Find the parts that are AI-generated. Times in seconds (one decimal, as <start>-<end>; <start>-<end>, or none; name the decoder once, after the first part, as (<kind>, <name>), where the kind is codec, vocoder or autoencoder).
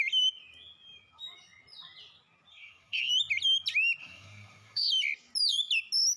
2.5-3.1 (codec, SNAC); 4.0-4.9